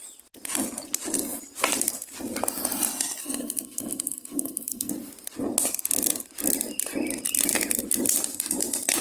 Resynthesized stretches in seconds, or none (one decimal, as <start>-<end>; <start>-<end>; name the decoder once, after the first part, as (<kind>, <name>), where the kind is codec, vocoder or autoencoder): 3.2-4.9 (codec, SNAC)